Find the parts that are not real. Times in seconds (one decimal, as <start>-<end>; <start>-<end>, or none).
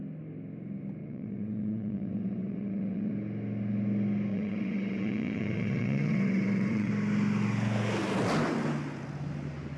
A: 1.0-3.1; 4.3-6.9